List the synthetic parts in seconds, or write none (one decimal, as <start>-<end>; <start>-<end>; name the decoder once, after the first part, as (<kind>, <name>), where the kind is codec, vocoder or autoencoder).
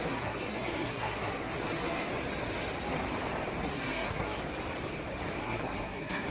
0.0-2.1 (codec, SNAC); 3.6-4.4; 5.4-6.3